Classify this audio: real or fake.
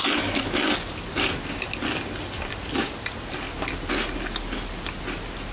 real